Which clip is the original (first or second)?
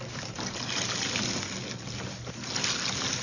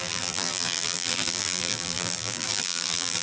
first